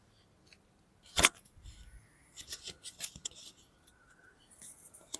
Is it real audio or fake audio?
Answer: real